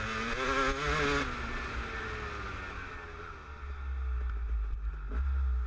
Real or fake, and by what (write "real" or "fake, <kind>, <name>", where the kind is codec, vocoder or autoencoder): real